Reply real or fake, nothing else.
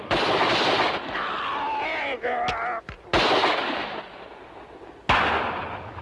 real